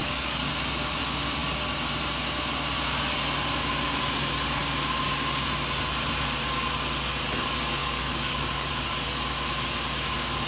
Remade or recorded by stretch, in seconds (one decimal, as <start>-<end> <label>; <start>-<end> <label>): 0.0-0.5 remade; 0.5-7.8 recorded; 7.8-8.7 remade; 8.7-10.5 recorded